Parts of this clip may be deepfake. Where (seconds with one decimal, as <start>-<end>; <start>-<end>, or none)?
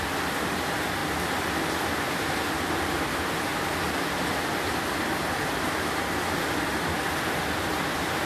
none